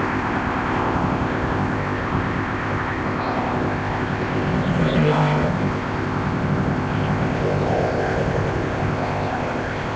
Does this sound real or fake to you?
fake